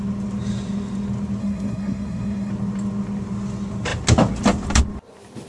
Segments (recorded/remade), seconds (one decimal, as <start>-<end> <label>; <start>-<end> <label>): 0.0-1.4 recorded; 1.4-2.5 remade; 2.5-5.5 recorded